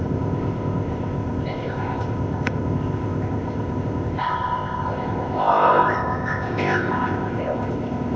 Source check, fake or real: fake